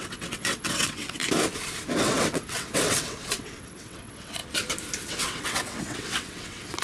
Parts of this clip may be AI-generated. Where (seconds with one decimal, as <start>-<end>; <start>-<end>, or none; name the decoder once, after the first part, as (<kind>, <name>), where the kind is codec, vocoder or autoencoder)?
0.0-1.2 (vocoder, WaveNeXt); 2.0-4.4; 5.1-6.8